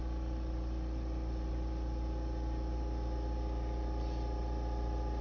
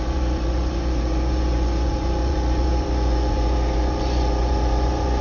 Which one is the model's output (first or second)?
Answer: second